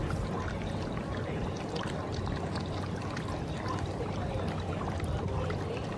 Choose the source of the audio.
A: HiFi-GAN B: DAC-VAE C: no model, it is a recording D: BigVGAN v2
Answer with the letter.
C